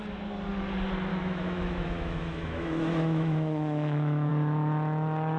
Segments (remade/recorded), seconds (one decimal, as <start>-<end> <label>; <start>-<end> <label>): 0.0-1.1 recorded; 1.1-4.3 remade; 4.3-5.4 recorded